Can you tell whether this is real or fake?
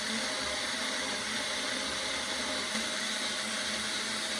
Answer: real